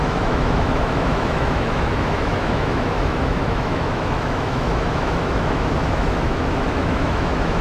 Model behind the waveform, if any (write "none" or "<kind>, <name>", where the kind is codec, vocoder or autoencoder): autoencoder, DAC-VAE